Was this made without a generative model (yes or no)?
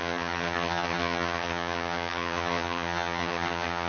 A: no